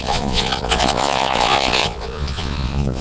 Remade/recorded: remade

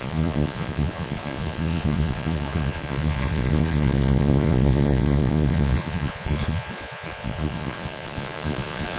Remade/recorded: remade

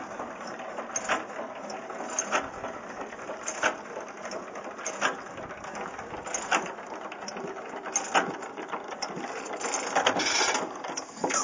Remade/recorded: recorded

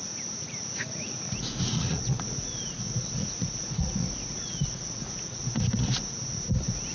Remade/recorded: remade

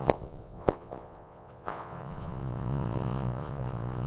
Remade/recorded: remade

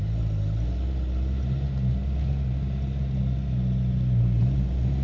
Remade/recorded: recorded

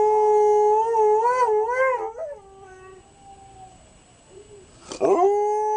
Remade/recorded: recorded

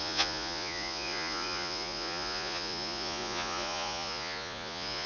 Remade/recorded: remade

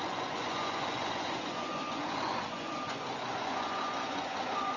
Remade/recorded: remade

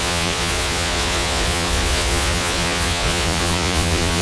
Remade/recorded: remade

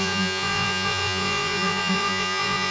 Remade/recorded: remade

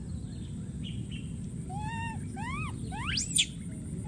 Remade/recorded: recorded